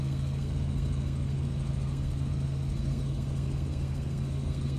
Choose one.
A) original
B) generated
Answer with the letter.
B